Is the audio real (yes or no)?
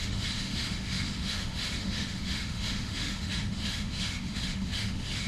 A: no